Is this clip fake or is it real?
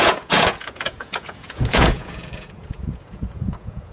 fake